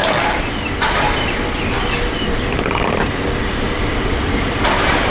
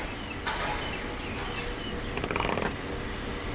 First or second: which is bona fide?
second